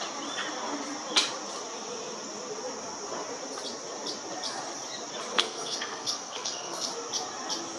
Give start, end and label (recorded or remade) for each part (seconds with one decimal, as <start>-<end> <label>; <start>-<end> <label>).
0.0-5.3 recorded; 5.3-6.9 remade; 6.9-7.8 recorded